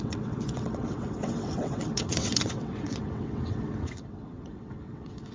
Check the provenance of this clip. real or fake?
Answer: fake